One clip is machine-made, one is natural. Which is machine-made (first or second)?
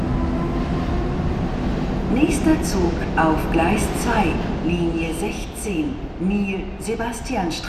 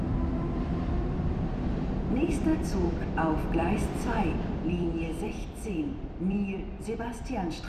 second